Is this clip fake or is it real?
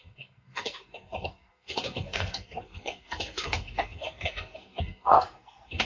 fake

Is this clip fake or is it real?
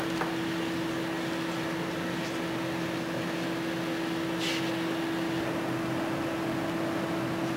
real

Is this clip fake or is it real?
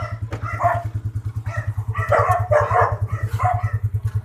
real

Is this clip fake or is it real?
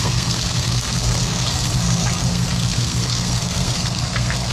fake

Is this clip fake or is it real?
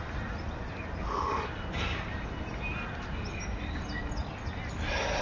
real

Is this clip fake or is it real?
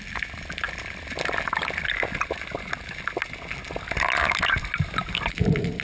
real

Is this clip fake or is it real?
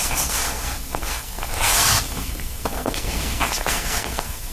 fake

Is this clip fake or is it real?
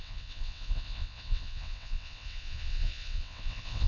fake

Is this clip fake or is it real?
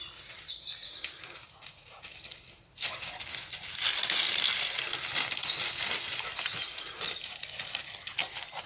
real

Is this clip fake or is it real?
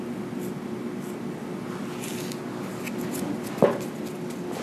real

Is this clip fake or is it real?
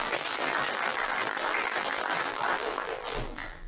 fake